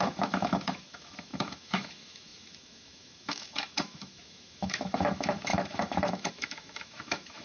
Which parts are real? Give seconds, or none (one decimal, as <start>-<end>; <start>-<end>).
none